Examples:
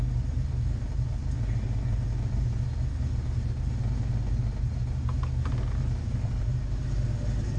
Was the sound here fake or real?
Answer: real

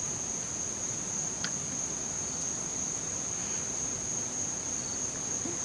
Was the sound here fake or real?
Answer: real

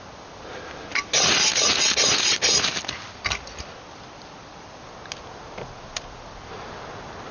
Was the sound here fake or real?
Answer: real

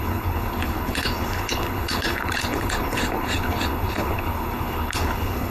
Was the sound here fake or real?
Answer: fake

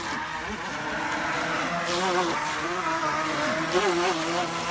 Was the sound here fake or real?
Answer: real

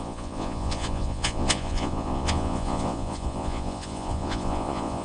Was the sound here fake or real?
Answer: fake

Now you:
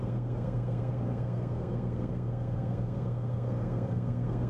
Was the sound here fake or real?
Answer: fake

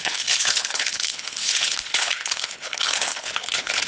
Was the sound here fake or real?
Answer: fake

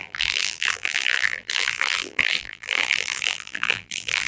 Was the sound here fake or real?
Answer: fake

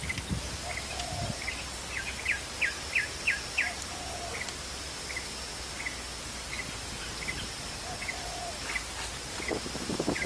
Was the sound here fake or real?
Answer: real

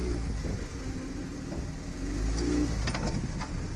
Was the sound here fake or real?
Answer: real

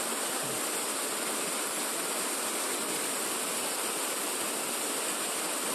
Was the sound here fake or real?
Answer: real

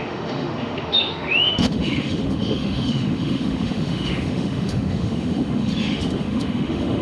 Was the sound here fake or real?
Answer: fake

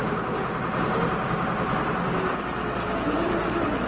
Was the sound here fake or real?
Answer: real